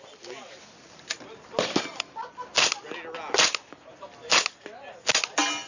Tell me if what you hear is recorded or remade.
recorded